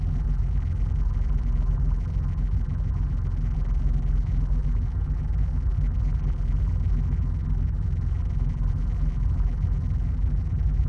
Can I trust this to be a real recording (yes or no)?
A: no